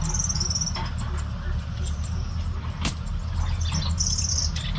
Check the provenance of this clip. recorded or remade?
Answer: recorded